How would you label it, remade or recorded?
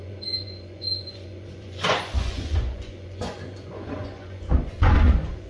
remade